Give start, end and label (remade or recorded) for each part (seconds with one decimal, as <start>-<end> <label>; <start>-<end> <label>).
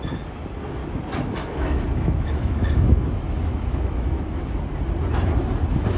0.0-0.8 recorded; 0.8-4.4 remade; 4.4-6.0 recorded